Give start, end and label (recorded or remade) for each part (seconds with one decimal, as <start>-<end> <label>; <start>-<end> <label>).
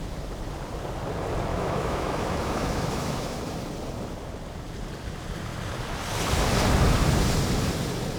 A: 0.0-1.5 recorded; 1.5-3.4 remade; 3.4-8.2 recorded